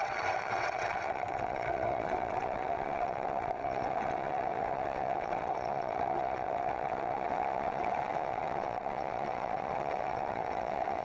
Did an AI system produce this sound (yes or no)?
yes